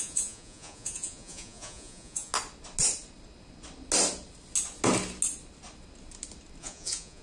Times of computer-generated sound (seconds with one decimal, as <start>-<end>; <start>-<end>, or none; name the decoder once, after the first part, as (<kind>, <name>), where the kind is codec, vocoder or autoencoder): 0.0-2.3 (vocoder, Vocos); 6.6-7.2

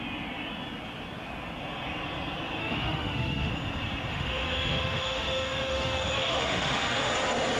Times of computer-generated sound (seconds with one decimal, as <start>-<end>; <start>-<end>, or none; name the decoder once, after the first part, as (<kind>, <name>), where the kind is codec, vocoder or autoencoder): 2.6-3.5 (autoencoder, DAC-VAE); 4.1-7.1

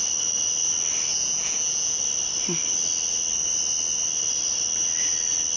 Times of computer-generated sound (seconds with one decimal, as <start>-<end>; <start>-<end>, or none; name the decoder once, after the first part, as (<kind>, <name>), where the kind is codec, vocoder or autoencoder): 1.1-2.0 (vocoder, Vocos)

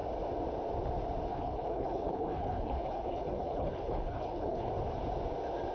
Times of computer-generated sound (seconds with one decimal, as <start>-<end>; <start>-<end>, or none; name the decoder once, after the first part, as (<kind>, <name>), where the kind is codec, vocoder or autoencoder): 1.3-4.7 (codec, HILCodec)

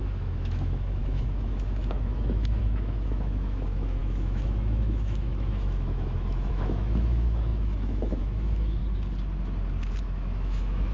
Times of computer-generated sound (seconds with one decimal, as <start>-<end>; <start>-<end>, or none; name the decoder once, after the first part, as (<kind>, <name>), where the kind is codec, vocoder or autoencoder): 0.0-8.8 (autoencoder, DAC-VAE); 10.0-10.9

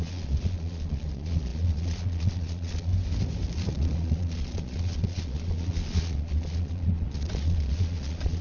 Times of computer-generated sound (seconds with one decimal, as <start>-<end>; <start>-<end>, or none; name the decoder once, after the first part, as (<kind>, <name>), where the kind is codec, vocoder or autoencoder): 0.0-2.9 (vocoder, Vocos); 3.7-8.4

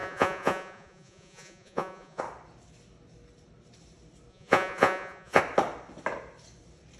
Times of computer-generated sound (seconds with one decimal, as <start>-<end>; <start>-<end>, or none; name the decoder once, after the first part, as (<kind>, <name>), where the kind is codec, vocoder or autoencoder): 0.0-2.2 (vocoder, Vocos); 4.3-5.4

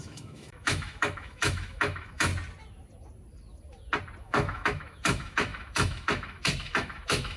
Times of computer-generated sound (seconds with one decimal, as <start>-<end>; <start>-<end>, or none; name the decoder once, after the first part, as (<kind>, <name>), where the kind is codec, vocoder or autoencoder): 0.0-2.3 (autoencoder, DAC-VAE); 4.2-7.4